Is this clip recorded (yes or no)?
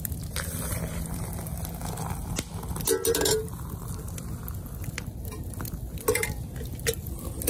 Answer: yes